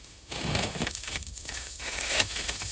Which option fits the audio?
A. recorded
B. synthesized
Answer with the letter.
B